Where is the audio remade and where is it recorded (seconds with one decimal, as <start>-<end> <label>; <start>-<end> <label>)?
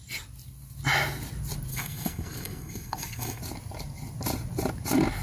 0.0-1.7 recorded; 1.7-3.4 remade; 3.4-5.2 recorded